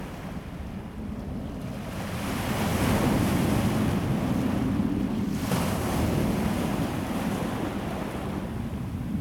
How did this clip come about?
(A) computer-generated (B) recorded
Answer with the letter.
B